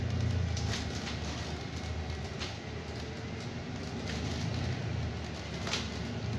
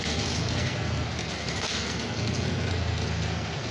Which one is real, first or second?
first